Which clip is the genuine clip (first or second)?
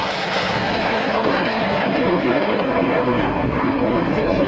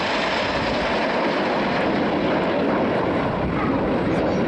second